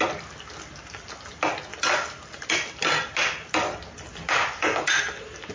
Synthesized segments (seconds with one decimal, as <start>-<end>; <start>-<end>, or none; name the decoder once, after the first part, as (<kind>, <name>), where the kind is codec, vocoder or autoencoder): none